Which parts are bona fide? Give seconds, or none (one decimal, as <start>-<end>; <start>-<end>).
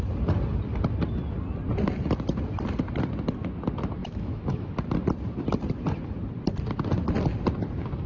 0.0-4.0; 4.7-8.1